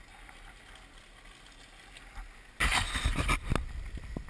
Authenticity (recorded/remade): recorded